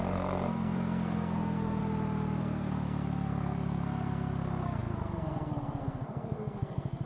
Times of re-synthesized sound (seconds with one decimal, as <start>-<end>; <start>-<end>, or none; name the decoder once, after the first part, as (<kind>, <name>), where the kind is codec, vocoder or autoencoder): 0.0-1.8 (codec, SNAC); 2.4-7.1

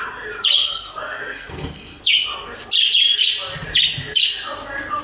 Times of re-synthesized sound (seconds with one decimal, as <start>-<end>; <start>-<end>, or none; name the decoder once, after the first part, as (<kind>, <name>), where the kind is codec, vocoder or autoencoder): 0.6-2.0 (codec, SNAC)